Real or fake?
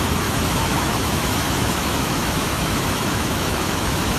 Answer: fake